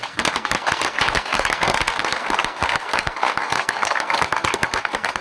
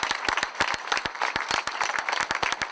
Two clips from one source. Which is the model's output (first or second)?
first